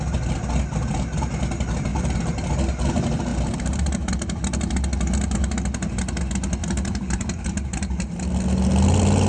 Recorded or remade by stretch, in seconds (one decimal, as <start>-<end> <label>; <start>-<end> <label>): 0.0-1.9 recorded; 1.9-2.5 remade; 2.5-3.3 recorded; 3.3-4.1 remade; 4.1-6.6 recorded; 6.6-8.2 remade; 8.2-9.3 recorded